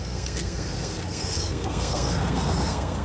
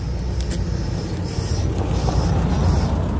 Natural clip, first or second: second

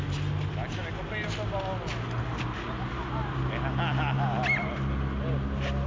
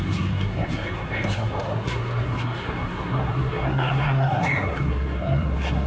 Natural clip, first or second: first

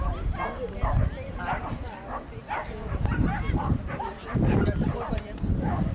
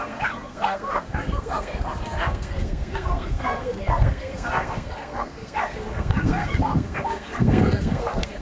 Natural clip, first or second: first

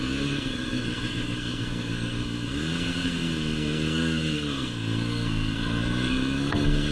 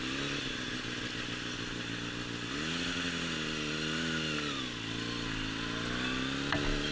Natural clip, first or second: second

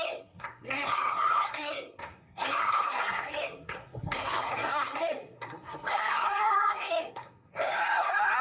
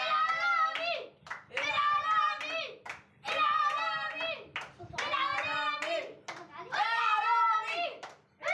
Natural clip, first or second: second